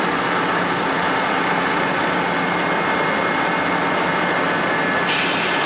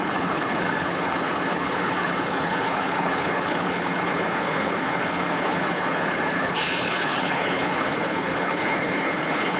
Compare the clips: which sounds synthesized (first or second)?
second